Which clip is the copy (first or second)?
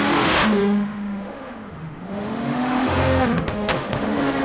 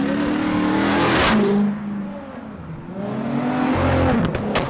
first